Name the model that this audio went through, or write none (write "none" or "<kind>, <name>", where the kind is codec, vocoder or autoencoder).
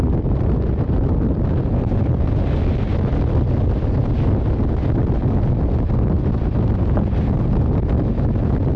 none